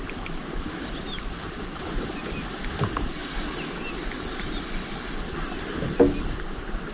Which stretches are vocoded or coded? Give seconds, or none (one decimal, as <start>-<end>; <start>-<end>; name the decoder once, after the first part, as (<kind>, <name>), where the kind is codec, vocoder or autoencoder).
none

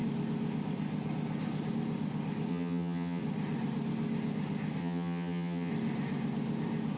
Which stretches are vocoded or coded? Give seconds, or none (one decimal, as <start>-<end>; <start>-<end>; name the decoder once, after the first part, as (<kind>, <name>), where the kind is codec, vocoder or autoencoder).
2.5-3.2 (vocoder, HiFi-GAN); 4.8-5.7

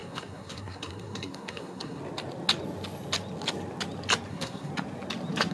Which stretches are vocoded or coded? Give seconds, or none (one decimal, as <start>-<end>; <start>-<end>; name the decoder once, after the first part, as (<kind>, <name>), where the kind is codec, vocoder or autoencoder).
0.0-2.0 (codec, SNAC); 4.3-4.7